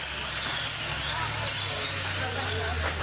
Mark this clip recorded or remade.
recorded